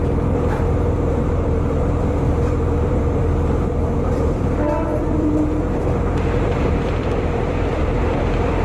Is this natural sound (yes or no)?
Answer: no